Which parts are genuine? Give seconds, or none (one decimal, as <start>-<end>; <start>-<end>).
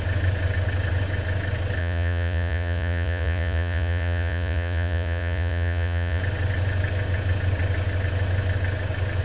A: 0.0-1.8; 6.2-9.2